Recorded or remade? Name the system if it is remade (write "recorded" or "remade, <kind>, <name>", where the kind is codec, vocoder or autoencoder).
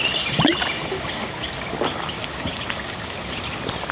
recorded